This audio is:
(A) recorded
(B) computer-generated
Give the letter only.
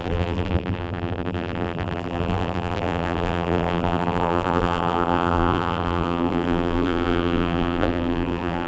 B